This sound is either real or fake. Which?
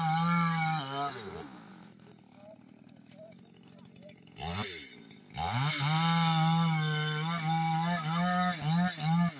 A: real